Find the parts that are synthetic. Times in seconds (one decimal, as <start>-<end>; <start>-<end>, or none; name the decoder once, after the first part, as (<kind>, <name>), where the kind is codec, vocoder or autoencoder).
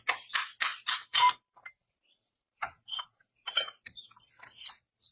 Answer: 0.7-3.3 (vocoder, BigVGAN v2)